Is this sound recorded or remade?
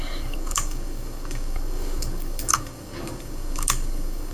remade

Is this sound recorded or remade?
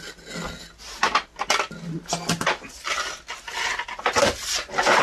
recorded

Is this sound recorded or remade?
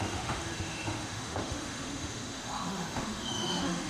remade